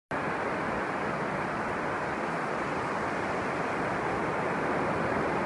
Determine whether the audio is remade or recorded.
recorded